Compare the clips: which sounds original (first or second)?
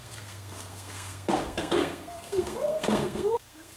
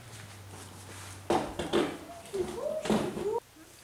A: second